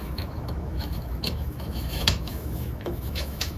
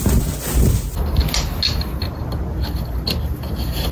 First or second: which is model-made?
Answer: first